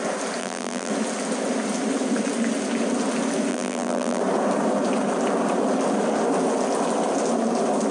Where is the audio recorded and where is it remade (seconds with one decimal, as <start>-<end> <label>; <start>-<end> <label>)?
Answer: 0.0-0.4 recorded; 0.4-0.9 remade; 0.9-3.5 recorded; 3.5-4.2 remade; 4.2-7.9 recorded